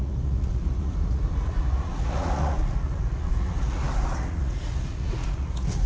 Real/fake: fake